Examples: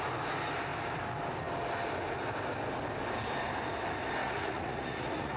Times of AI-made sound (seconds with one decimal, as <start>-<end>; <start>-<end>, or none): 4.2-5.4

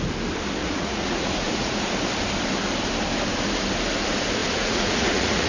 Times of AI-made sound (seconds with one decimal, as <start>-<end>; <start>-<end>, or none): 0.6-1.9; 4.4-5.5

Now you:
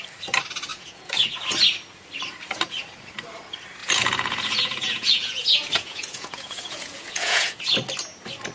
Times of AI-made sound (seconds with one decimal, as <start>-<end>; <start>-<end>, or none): 0.7-1.4; 3.8-7.6

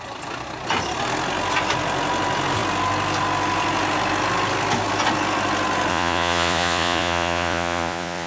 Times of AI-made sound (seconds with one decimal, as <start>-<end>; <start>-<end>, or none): 5.9-8.3

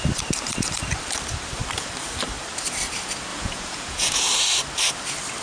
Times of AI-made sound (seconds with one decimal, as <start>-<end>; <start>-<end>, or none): 3.3-4.2

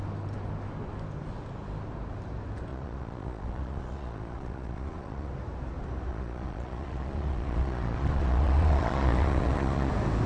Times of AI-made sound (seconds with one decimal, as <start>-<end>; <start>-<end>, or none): 2.7-5.3; 6.1-9.9